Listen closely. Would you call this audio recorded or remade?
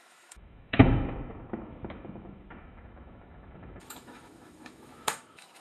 remade